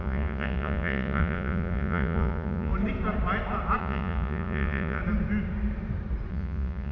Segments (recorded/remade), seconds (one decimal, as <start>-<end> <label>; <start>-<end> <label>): 0.0-2.7 remade; 2.7-3.8 recorded; 3.8-5.0 remade; 5.0-6.3 recorded; 6.3-6.9 remade